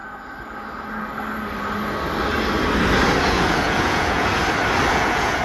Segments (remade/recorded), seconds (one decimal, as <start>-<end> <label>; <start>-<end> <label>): 0.0-3.2 recorded; 3.2-4.4 remade; 4.4-4.9 recorded; 4.9-5.4 remade